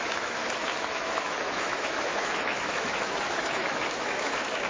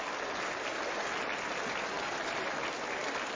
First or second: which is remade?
first